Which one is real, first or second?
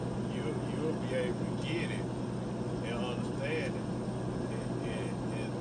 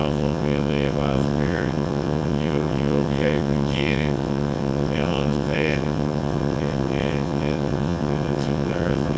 first